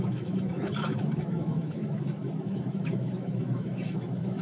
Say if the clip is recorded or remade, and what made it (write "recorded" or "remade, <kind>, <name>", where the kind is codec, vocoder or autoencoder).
remade, autoencoder, DAC-VAE